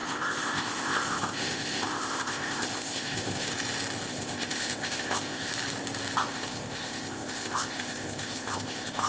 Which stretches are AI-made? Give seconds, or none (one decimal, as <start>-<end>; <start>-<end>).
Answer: 0.0-3.5; 4.1-5.5; 6.3-9.1